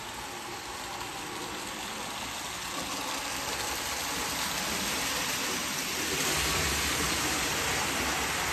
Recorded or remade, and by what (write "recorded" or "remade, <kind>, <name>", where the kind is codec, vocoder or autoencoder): recorded